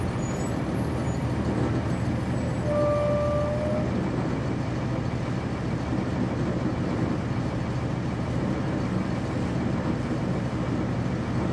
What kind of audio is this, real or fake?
real